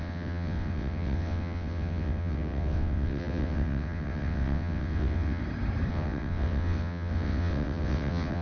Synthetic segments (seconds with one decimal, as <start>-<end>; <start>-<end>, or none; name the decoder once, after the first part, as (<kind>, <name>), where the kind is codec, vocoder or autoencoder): 0.0-5.4 (vocoder, WaveNeXt); 5.9-8.4